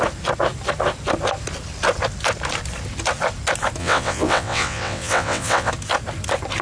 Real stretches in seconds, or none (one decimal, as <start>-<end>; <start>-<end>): 0.0-3.8; 5.7-6.6